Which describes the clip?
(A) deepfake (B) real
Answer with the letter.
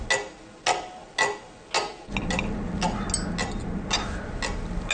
B